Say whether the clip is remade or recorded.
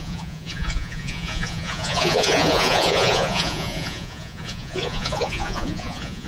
remade